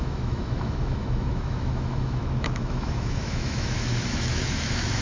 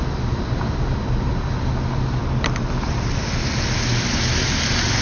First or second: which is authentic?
second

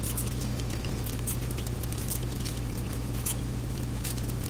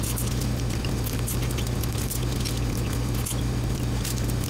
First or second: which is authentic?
second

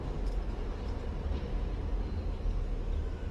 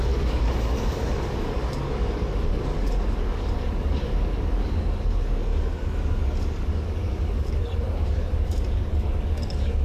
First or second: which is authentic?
first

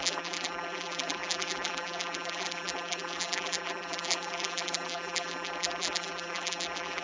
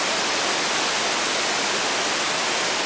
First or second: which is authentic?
second